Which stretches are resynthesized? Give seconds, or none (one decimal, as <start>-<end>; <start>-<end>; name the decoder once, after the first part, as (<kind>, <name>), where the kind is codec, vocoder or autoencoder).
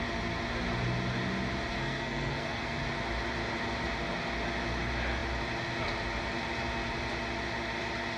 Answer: 1.7-2.8 (codec, SNAC)